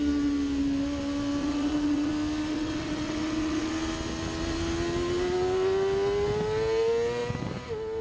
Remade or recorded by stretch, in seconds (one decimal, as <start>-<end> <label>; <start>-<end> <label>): 0.0-1.4 recorded; 1.4-2.1 remade; 2.1-2.5 recorded; 2.5-3.7 remade; 3.7-8.0 recorded